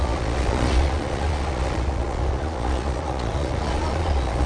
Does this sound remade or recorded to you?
remade